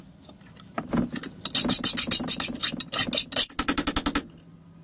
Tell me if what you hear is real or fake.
real